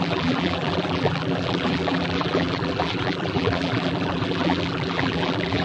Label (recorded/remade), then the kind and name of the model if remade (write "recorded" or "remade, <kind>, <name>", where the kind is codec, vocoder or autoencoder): remade, vocoder, BigVGAN v2